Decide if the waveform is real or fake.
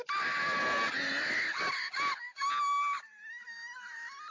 real